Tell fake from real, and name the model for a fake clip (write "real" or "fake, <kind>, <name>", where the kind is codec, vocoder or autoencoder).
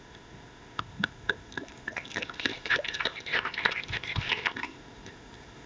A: fake, codec, ZipCodec